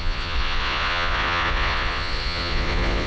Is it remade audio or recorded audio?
remade